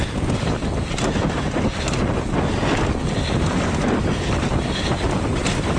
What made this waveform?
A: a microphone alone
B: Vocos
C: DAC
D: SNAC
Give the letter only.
A